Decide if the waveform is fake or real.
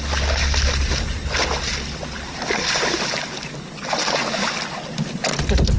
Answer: real